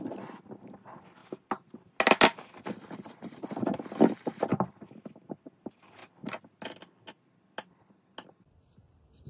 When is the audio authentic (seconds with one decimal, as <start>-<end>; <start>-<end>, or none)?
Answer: 0.0-9.3